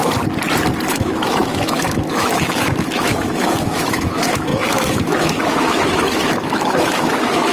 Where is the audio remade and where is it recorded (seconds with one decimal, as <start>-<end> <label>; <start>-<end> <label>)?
0.0-0.9 recorded; 0.9-7.5 remade